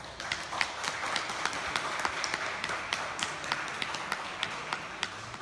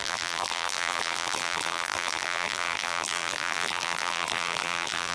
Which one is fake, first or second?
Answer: second